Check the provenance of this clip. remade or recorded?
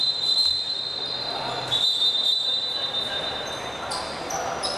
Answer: recorded